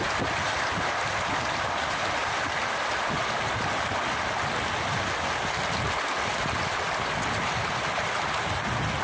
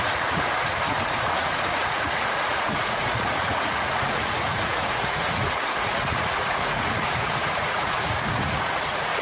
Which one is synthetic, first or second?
second